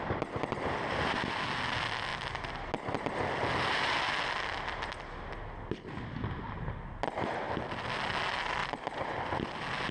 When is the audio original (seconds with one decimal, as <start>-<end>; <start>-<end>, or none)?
0.0-8.6; 9.1-9.9